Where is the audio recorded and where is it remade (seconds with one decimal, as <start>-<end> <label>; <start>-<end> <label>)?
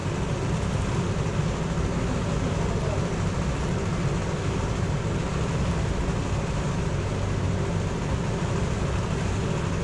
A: 0.0-9.8 recorded